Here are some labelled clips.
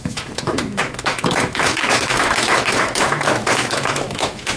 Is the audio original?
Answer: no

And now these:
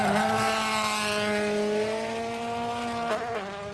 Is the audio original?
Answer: yes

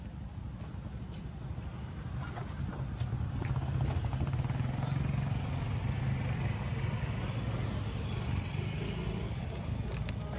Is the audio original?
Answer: yes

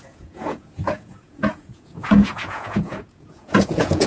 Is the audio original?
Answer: no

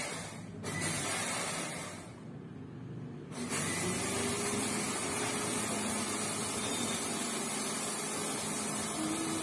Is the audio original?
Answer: yes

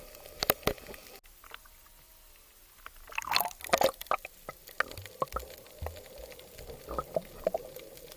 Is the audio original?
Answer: yes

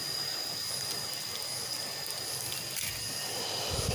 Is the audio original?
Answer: yes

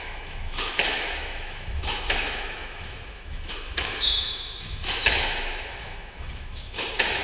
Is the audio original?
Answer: no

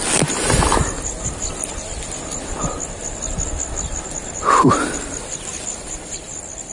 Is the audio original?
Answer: yes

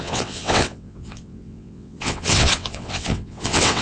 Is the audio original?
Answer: no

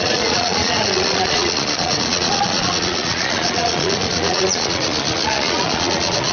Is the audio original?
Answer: no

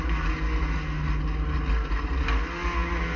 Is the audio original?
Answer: yes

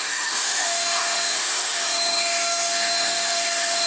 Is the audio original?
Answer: no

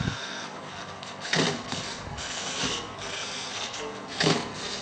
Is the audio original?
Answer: no